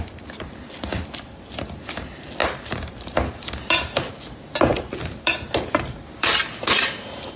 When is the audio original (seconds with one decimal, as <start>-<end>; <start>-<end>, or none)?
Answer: 0.0-2.4; 4.1-4.7; 6.4-7.4